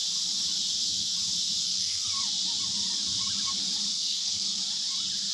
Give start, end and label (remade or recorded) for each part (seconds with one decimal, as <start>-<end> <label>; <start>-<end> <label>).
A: 0.0-1.6 recorded; 1.6-2.1 remade; 2.1-3.9 recorded; 3.9-4.6 remade; 4.6-5.3 recorded